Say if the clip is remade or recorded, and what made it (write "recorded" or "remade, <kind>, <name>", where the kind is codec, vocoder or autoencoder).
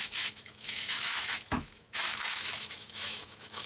remade, autoencoder, DAC-VAE